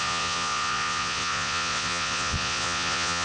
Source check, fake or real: fake